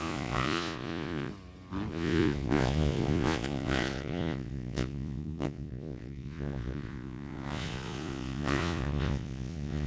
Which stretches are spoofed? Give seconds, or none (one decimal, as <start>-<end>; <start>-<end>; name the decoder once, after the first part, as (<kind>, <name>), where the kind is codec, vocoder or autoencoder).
0.0-1.3 (vocoder, Vocos); 1.9-9.9